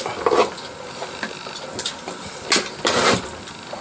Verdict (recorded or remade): recorded